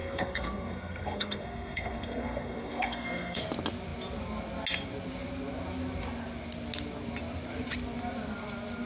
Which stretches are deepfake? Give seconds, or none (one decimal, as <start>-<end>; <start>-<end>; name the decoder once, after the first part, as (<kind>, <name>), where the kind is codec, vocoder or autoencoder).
0.0-3.4 (codec, SNAC)